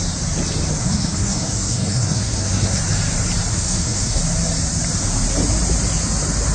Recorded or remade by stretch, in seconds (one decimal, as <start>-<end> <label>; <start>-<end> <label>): 0.0-0.8 recorded; 0.8-2.8 remade; 2.8-3.5 recorded; 3.5-4.2 remade; 4.2-6.5 recorded